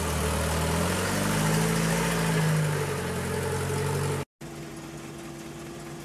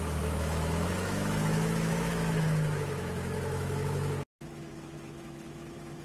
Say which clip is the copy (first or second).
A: second